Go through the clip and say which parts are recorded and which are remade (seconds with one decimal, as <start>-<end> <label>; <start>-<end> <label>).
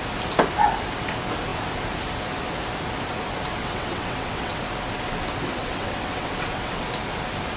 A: 0.0-3.6 recorded; 3.6-4.6 remade; 4.6-5.6 recorded; 5.6-6.8 remade; 6.8-7.6 recorded